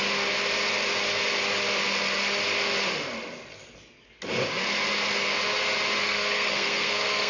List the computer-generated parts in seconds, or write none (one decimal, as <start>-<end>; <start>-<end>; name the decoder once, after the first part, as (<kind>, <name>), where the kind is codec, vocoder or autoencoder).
6.0-7.3 (codec, SNAC)